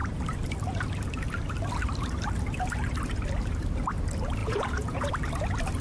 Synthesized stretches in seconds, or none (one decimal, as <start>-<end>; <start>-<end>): 4.4-5.1